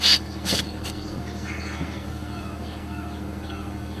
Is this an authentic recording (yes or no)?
no